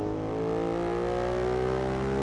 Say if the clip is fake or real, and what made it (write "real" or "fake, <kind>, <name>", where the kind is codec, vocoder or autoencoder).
real